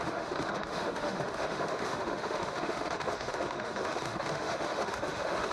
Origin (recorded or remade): remade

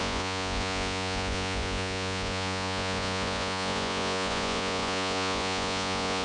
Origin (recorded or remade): remade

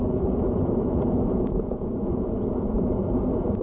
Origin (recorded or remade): remade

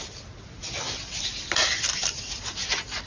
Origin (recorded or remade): recorded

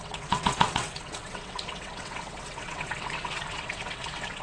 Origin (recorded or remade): remade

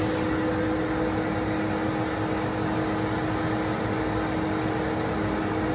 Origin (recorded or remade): recorded